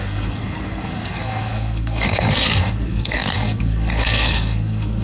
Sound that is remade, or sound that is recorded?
remade